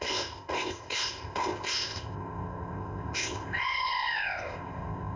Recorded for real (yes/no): no